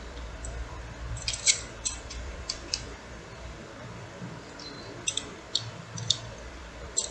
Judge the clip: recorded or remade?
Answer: remade